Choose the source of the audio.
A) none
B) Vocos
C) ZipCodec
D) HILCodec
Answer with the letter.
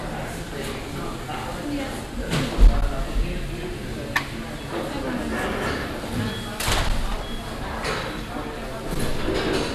A